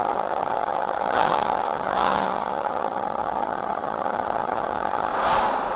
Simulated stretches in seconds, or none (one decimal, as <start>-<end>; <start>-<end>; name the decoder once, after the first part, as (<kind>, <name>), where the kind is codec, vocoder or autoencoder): 0.0-5.1 (vocoder, HiFi-GAN)